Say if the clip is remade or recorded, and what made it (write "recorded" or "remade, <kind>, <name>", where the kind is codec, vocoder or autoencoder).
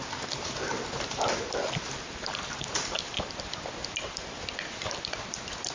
recorded